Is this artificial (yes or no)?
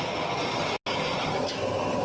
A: no